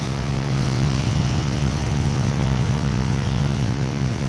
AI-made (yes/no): yes